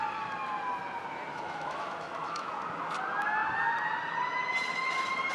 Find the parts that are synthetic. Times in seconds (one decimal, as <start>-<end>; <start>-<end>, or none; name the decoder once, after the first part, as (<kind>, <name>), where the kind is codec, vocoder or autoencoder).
1.3-2.5 (autoencoder, DAC-VAE)